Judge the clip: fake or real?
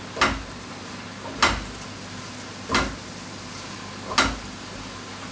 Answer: real